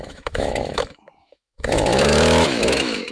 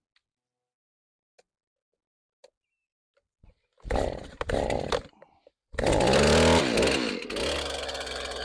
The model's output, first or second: first